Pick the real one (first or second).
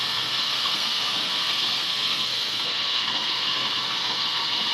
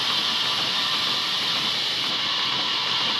second